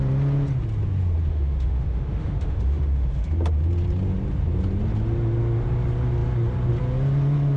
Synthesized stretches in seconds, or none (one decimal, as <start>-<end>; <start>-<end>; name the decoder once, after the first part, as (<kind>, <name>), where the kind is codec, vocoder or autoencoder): 1.3-3.3 (autoencoder, DAC-VAE)